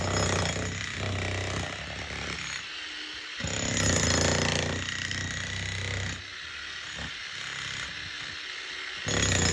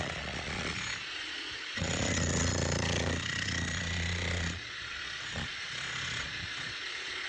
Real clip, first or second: first